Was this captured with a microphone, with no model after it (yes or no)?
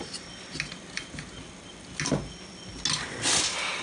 yes